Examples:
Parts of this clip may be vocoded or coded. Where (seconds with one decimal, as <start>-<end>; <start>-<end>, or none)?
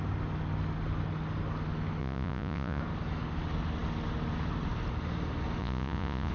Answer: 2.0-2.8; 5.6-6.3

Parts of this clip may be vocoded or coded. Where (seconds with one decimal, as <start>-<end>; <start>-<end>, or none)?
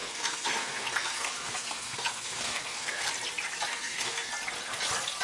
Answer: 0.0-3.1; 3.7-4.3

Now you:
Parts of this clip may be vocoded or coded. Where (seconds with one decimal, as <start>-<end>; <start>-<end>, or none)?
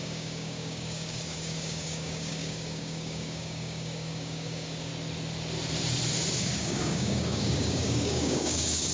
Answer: 0.0-4.9; 6.4-8.9